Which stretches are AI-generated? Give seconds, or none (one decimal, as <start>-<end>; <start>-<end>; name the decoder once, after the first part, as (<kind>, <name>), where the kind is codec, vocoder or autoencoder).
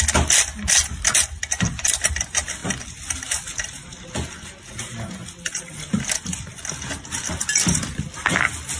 none